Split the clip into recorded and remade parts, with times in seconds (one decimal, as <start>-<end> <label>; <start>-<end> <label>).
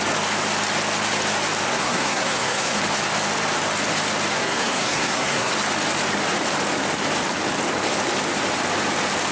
0.0-1.7 recorded; 1.7-2.8 remade; 2.8-4.3 recorded; 4.3-5.5 remade; 5.5-9.3 recorded